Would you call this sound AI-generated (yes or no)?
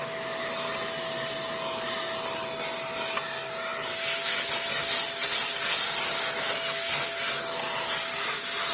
no